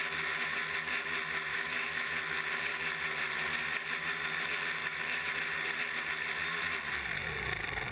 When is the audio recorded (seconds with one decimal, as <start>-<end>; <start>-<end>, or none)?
0.0-1.5; 2.1-4.8; 5.3-7.9